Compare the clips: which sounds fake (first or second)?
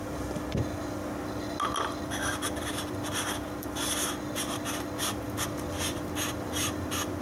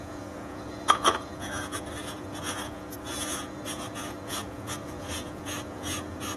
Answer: second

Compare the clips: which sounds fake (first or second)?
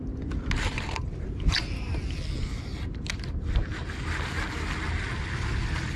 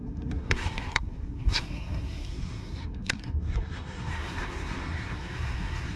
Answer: second